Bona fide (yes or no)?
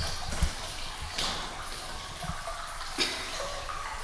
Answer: yes